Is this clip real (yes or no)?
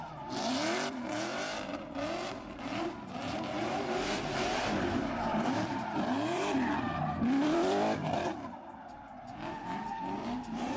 no